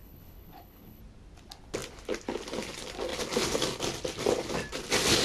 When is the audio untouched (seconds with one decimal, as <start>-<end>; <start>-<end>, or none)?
1.0-5.2